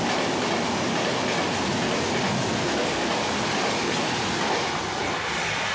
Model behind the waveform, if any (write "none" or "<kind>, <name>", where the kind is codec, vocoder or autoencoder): none